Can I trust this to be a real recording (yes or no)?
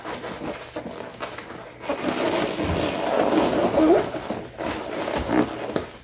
yes